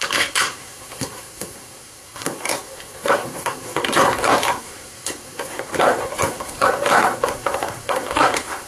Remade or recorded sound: remade